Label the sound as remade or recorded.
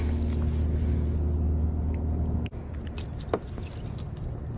recorded